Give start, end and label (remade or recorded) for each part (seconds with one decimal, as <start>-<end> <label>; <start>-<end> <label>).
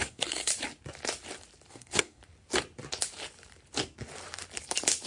0.0-0.5 remade; 0.5-1.7 recorded; 1.7-2.2 remade; 2.2-5.1 recorded